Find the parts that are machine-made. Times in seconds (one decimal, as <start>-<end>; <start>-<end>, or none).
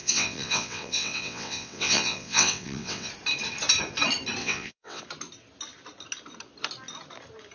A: 0.0-3.1; 4.4-5.0